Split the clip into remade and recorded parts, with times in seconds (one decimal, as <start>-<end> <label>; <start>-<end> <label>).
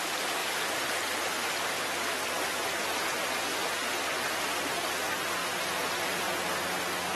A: 0.0-3.5 recorded; 3.5-4.6 remade; 4.6-7.2 recorded